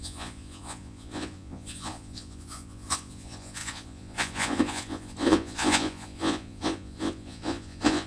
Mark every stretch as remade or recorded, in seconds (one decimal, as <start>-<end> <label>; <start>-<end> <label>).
0.0-8.1 remade